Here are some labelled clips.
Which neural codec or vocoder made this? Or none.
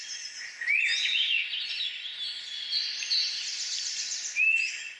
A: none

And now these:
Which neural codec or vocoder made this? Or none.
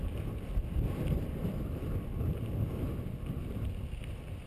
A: none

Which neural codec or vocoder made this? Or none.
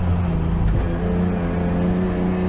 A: none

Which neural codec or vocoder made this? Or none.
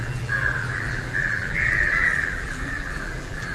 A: vocoder, BigVGAN v2